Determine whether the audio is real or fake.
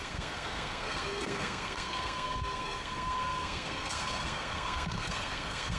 fake